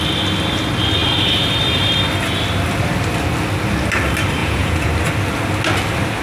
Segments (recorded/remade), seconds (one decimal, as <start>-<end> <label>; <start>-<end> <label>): 0.0-4.4 recorded; 4.4-4.9 remade; 4.9-6.2 recorded